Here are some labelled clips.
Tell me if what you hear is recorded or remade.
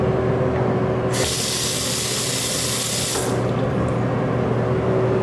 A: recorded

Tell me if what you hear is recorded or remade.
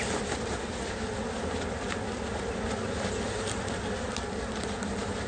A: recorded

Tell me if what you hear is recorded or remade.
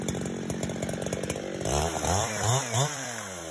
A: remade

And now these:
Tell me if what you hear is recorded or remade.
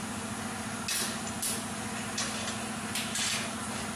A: recorded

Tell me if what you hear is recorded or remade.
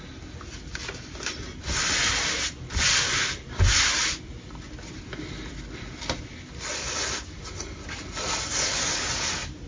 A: recorded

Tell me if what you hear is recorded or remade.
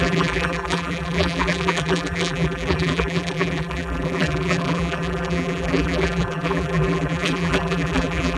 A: remade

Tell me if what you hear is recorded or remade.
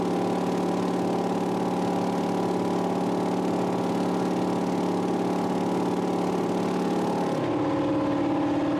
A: recorded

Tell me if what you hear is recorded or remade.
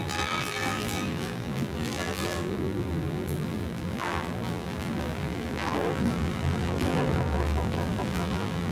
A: remade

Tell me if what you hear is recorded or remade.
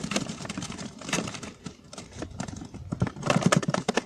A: remade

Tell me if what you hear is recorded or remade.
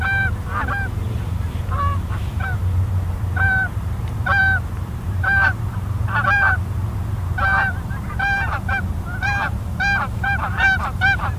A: remade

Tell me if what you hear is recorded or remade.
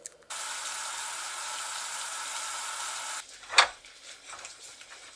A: recorded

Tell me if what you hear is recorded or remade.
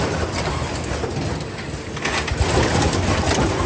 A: recorded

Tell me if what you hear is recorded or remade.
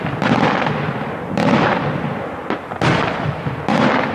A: recorded